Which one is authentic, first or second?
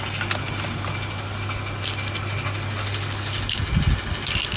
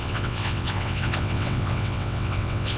first